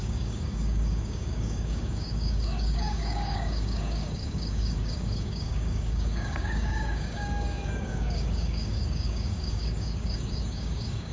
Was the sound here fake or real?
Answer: fake